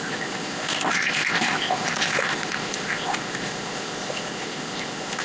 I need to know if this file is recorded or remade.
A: remade